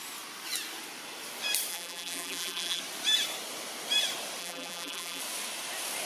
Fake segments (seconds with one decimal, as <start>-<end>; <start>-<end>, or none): 1.7-2.8; 4.4-5.2